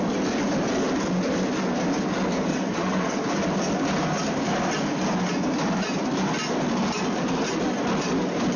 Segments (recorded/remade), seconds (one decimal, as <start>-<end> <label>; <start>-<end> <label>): 0.0-2.5 recorded; 2.5-3.2 remade; 3.2-8.6 recorded